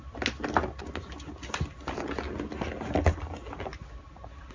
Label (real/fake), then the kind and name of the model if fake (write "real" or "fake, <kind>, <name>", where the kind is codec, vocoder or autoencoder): real